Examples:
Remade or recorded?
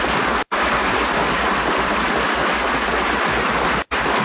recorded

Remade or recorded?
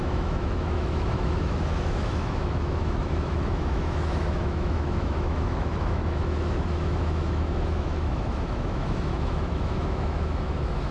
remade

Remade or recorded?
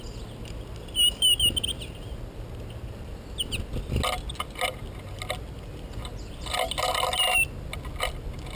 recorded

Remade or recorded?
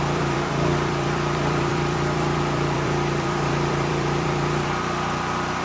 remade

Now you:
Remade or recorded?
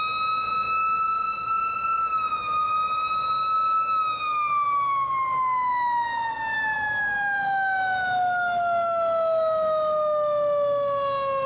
recorded